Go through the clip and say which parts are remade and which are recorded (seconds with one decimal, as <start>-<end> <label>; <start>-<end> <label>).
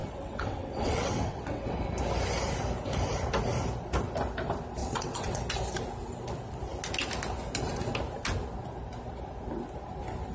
0.0-1.8 remade; 1.8-4.8 recorded; 4.8-5.4 remade; 5.4-10.3 recorded